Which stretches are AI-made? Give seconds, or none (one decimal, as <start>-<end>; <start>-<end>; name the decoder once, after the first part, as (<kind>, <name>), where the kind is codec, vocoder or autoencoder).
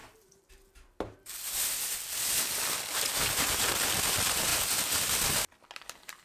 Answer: none